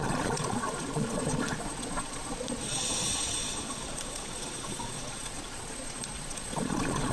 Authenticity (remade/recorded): remade